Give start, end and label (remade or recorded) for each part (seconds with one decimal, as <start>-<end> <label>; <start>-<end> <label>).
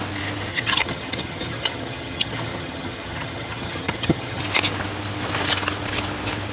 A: 0.0-0.5 recorded; 0.5-4.4 remade; 4.4-6.5 recorded